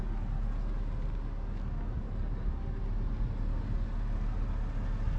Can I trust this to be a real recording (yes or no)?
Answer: yes